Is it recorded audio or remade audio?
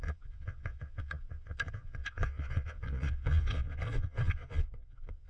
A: remade